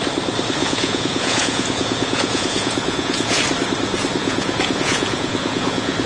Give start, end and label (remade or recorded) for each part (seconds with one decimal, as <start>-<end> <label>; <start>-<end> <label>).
0.0-0.6 recorded; 0.6-3.4 remade; 3.4-4.2 recorded; 4.2-6.1 remade